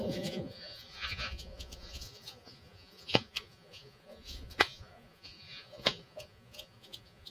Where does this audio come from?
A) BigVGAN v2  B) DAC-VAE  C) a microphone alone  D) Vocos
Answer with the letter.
D